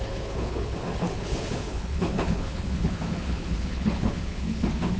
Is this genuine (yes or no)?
no